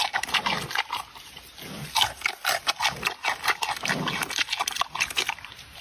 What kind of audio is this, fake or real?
real